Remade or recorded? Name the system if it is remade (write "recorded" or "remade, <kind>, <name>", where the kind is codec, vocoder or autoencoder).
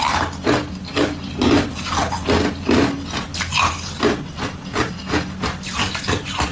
recorded